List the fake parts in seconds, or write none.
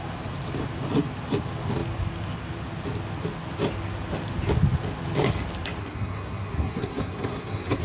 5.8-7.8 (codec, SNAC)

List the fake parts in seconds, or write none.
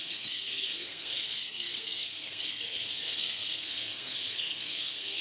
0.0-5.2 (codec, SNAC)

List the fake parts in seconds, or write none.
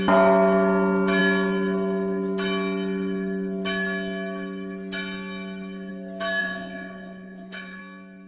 6.4-7.8 (vocoder, Vocos)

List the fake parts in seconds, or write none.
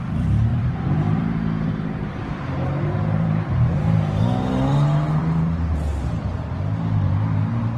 0.5-4.2 (vocoder, BigVGAN v2); 5.2-6.3